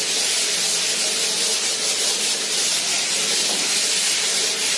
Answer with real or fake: real